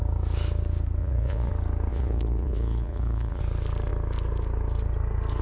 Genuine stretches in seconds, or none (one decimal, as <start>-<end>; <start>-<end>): 0.0-1.0; 1.5-1.9; 3.4-5.4